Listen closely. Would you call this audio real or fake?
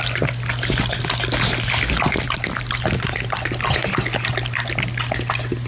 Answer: real